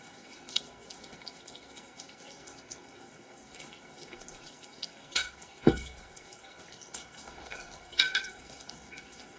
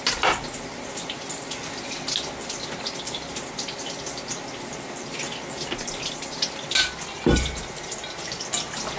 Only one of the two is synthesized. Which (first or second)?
first